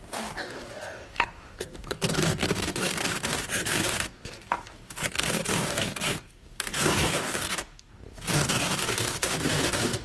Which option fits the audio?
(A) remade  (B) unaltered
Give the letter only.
A